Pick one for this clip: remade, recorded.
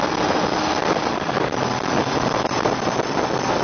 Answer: remade